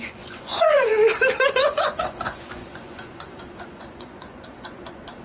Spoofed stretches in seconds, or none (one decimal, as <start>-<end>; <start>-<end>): 0.0-0.9; 1.5-5.2